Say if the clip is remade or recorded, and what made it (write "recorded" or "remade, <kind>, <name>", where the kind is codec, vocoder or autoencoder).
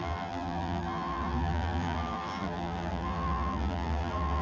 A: remade, vocoder, BigVGAN v2